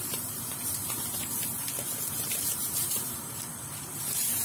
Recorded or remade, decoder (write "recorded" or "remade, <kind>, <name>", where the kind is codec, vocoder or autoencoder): remade, vocoder, BigVGAN v2